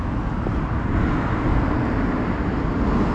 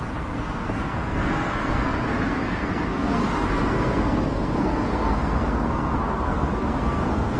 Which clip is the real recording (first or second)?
first